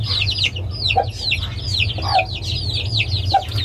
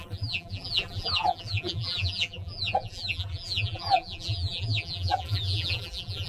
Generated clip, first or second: second